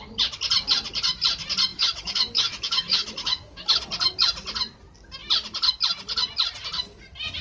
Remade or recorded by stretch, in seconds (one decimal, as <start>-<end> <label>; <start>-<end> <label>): 0.0-1.7 recorded; 1.7-3.8 remade; 3.8-7.4 recorded

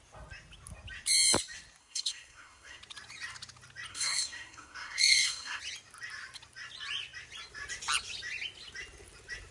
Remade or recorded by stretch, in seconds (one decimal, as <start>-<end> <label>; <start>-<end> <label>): 0.0-1.8 recorded; 1.8-2.8 remade; 2.8-3.9 recorded; 3.9-5.6 remade; 5.6-9.5 recorded

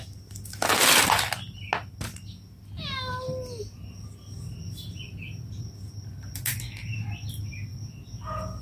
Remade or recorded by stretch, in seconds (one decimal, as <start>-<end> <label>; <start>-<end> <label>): 0.0-8.6 recorded